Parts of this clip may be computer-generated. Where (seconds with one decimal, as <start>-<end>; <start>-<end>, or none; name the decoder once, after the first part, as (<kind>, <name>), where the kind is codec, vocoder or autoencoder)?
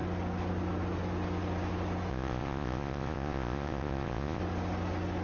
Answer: 2.1-4.4 (vocoder, Vocos)